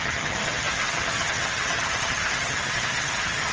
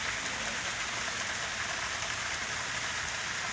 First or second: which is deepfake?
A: first